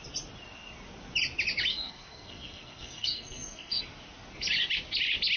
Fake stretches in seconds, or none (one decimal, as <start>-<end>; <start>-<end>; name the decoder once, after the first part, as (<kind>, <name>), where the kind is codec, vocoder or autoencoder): 1.7-3.8 (codec, SNAC)